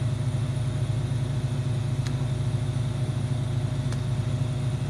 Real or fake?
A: real